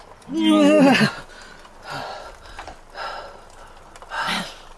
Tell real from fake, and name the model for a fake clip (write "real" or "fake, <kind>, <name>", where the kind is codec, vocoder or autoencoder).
real